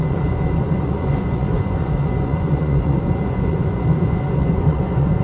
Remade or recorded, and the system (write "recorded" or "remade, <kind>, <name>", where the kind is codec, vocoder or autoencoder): remade, vocoder, Vocos